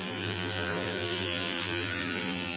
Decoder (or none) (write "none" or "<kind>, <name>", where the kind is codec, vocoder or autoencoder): vocoder, BigVGAN v2